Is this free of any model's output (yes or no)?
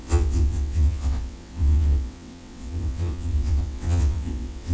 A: no